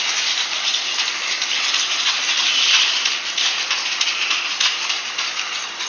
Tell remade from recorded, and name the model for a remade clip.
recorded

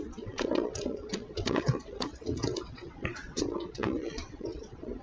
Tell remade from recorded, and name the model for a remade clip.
remade, vocoder, WaveNeXt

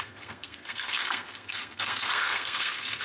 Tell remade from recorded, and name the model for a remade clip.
remade, codec, SNAC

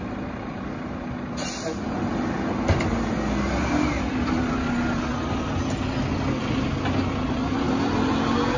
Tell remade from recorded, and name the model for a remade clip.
recorded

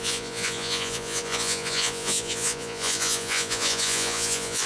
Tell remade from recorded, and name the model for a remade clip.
remade, vocoder, Vocos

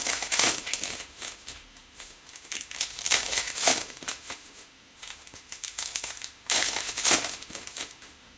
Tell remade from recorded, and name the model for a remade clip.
remade, autoencoder, DAC-VAE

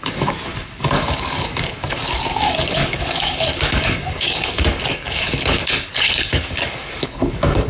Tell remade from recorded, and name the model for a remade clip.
remade, codec, DAC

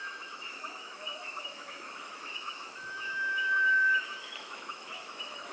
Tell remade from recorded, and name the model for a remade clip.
remade, autoencoder, DAC-VAE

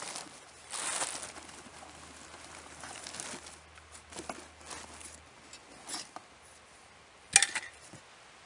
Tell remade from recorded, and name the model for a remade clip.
recorded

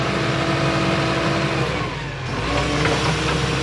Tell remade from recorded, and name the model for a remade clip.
recorded